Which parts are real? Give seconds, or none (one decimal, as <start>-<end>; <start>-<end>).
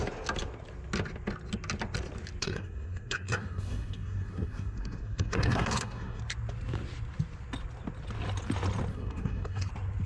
0.0-2.4; 6.2-8.9; 9.7-10.1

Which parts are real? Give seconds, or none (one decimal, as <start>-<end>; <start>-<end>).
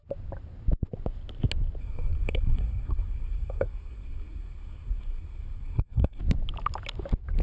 0.0-1.8; 6.2-7.4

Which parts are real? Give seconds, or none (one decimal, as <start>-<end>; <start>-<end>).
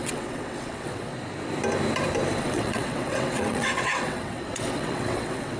1.1-2.4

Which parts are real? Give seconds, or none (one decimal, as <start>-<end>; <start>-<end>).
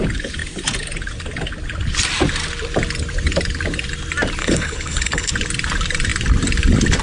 0.0-4.4; 5.3-7.0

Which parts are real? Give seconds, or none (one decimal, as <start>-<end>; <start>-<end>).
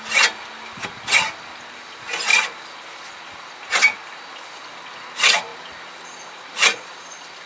0.0-7.5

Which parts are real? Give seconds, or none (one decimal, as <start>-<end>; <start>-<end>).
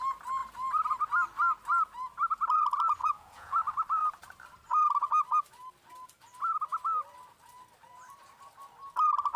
0.0-3.0; 3.6-9.4